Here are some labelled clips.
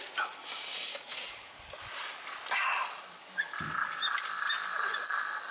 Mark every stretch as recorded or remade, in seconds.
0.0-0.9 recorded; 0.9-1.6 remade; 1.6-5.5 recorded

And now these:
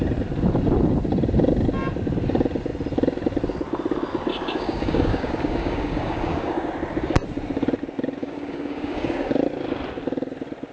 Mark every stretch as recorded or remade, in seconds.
0.0-4.3 recorded; 4.3-6.7 remade; 6.7-8.2 recorded; 8.2-9.3 remade; 9.3-10.7 recorded

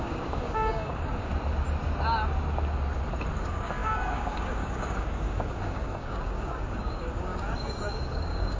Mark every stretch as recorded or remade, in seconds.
0.0-1.3 remade; 1.3-3.4 recorded; 3.4-8.6 remade

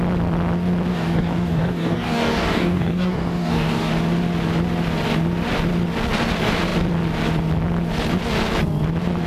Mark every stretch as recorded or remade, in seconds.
0.0-0.9 recorded; 0.9-3.9 remade; 3.9-9.3 recorded

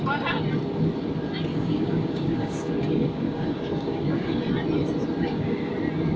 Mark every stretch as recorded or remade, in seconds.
0.0-1.5 recorded; 1.5-4.4 remade; 4.4-5.2 recorded; 5.2-5.7 remade; 5.7-6.2 recorded

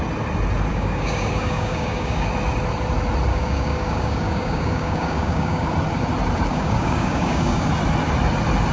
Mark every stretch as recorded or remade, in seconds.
0.0-0.7 recorded; 0.7-2.3 remade; 2.3-3.3 recorded; 3.3-5.7 remade; 5.7-6.5 recorded; 6.5-7.7 remade; 7.7-8.7 recorded

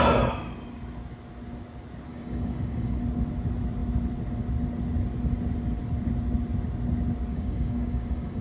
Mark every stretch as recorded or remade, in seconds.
0.0-2.1 recorded; 2.1-3.0 remade; 3.0-7.3 recorded; 7.3-8.4 remade